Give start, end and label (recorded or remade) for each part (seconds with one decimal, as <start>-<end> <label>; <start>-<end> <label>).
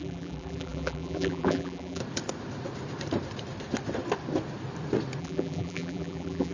0.0-2.0 remade; 2.0-5.2 recorded; 5.2-6.5 remade